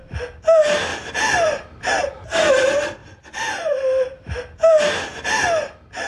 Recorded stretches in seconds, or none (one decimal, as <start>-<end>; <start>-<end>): 0.0-0.9; 1.9-3.0; 4.8-6.1